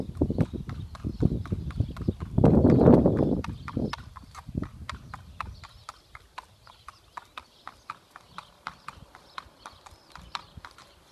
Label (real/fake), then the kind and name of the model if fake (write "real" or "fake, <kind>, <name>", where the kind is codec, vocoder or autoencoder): real